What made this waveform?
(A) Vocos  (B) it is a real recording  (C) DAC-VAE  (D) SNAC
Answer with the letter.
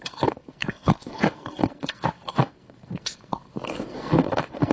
D